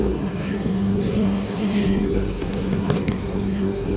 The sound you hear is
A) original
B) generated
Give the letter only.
B